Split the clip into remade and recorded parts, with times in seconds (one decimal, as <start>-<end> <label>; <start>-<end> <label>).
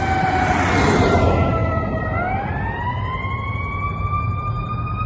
0.0-5.1 recorded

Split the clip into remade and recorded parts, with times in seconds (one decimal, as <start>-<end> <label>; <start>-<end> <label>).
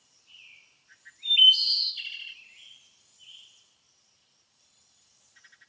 0.0-5.7 remade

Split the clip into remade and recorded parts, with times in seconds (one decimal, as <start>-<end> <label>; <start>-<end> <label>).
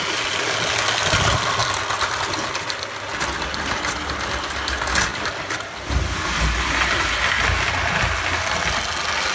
0.0-5.1 recorded; 5.1-6.0 remade; 6.0-9.3 recorded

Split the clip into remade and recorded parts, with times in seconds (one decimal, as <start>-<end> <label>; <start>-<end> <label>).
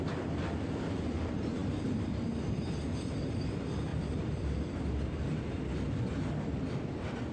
0.0-3.9 recorded; 3.9-6.4 remade; 6.4-7.3 recorded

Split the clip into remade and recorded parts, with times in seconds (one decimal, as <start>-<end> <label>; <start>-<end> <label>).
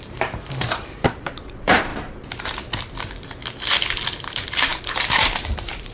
0.0-1.9 remade; 1.9-4.3 recorded; 4.3-5.9 remade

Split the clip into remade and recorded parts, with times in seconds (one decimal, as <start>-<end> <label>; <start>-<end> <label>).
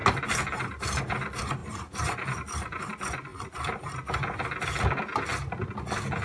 0.0-1.0 remade; 1.0-1.6 recorded; 1.6-2.8 remade; 2.8-6.2 recorded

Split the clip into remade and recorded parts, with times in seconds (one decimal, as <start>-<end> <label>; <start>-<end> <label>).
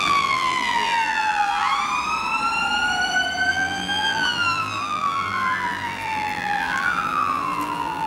0.0-1.7 remade; 1.7-3.5 recorded; 3.5-8.1 remade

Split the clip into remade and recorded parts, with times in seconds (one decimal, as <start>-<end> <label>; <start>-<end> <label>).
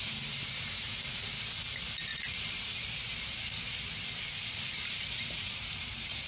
0.0-2.1 recorded; 2.1-6.3 remade